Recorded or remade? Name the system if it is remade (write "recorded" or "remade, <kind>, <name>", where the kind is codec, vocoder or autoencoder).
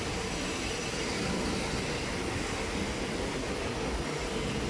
recorded